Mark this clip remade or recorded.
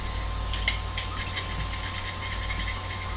recorded